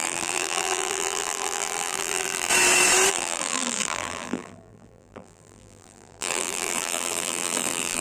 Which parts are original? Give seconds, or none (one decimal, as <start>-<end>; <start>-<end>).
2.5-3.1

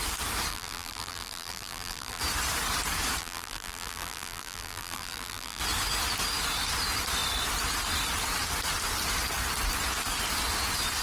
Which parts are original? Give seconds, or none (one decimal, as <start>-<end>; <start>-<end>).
0.0-0.5; 2.2-3.2; 5.6-11.0

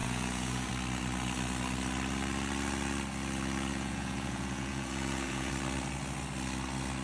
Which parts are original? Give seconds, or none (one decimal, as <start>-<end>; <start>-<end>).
0.7-3.7; 5.5-7.0